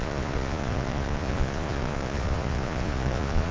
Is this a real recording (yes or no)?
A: no